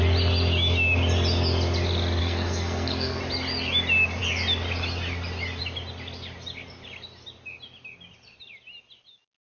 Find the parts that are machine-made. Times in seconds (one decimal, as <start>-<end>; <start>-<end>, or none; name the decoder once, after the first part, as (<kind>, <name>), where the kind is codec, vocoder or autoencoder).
2.2-3.2 (codec, SNAC)